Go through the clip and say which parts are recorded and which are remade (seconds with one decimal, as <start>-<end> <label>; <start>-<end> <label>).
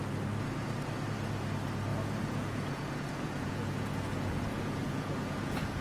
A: 0.0-1.9 recorded; 1.9-5.8 remade